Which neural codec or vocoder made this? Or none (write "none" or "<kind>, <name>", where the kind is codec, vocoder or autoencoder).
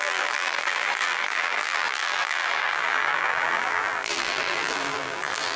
vocoder, BigVGAN v2